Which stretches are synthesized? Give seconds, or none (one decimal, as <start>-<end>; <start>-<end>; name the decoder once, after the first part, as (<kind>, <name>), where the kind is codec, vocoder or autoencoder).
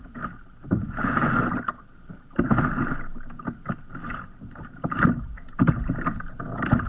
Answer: 0.8-1.3 (vocoder, Vocos)